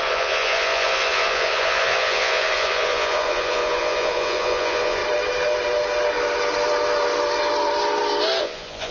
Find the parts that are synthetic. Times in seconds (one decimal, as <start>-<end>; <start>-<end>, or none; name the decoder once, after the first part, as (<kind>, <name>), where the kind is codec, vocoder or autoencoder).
0.0-5.0 (vocoder, Vocos); 8.4-8.9